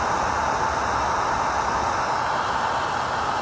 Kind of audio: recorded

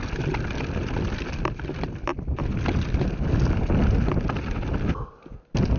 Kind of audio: recorded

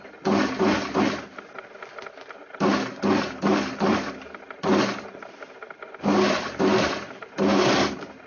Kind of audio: recorded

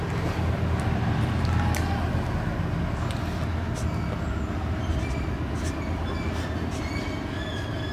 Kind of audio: recorded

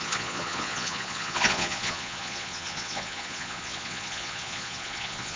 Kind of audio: remade